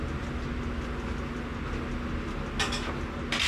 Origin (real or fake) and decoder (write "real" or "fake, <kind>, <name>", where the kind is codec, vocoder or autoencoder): real